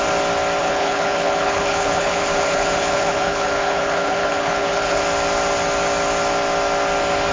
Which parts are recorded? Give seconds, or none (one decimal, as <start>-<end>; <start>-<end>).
0.0-0.6; 5.0-7.3